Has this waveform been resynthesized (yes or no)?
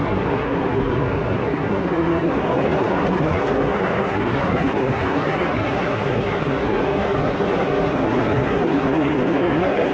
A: yes